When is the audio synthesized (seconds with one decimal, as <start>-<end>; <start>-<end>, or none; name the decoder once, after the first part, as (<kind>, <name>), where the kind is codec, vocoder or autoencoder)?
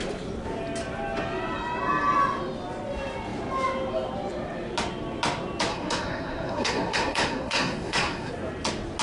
5.7-8.3 (codec, SNAC)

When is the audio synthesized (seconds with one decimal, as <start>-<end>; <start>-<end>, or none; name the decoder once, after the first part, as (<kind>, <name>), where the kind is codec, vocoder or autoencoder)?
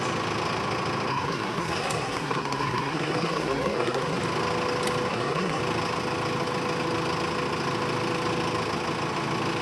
1.1-4.2 (codec, SNAC); 5.1-5.6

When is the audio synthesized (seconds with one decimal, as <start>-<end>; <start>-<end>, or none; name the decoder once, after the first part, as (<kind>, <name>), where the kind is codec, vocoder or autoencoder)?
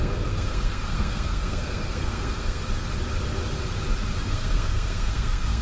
0.0-2.6 (codec, SNAC); 4.3-5.6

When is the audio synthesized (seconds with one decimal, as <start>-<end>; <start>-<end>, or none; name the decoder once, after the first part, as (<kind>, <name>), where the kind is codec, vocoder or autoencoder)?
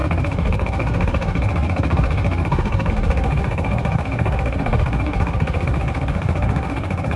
0.0-7.2 (codec, SNAC)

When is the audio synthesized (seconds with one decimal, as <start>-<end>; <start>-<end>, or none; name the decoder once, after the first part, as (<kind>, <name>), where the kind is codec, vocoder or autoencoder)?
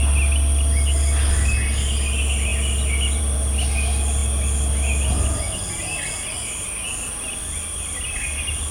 none